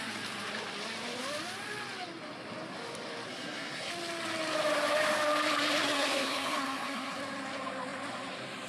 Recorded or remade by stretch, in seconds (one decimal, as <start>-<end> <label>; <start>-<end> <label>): 0.0-3.3 recorded; 3.3-3.9 remade; 3.9-5.8 recorded; 5.8-7.2 remade; 7.2-8.7 recorded